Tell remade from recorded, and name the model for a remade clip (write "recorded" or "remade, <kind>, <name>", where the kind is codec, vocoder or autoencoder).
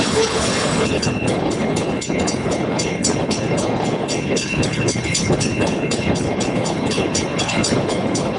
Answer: remade, codec, HILCodec